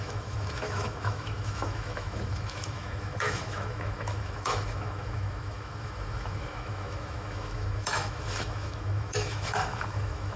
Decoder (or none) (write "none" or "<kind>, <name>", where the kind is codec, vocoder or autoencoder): autoencoder, DAC-VAE